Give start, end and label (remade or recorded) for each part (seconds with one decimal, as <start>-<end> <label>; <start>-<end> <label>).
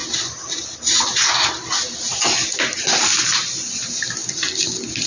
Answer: 0.0-5.1 recorded